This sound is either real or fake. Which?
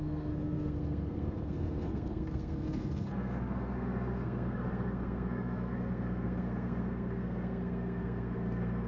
fake